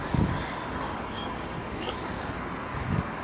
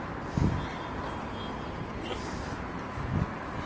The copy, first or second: first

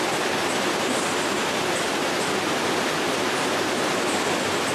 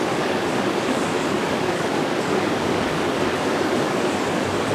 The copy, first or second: second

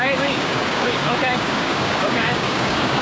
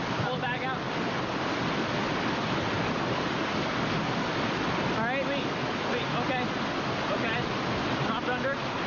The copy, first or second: first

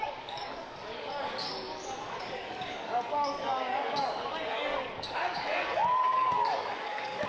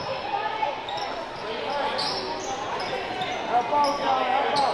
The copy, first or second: first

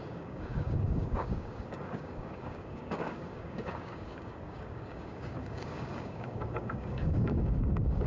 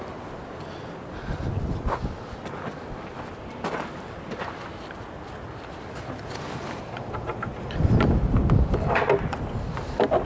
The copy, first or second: first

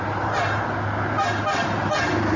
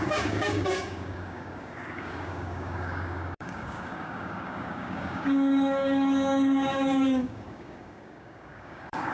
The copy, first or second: second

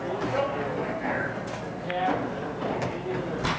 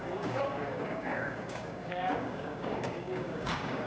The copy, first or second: second